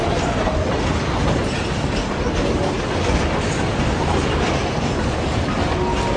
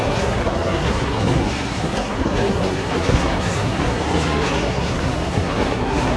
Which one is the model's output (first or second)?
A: second